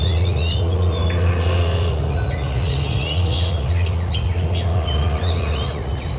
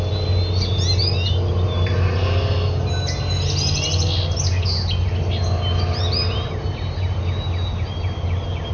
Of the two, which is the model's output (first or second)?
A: first